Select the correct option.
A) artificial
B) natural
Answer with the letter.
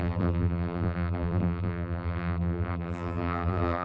A